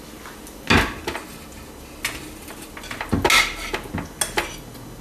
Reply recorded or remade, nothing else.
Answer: recorded